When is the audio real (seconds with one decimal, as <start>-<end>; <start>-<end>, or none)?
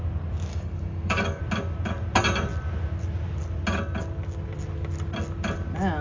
0.0-0.5; 1.4-6.0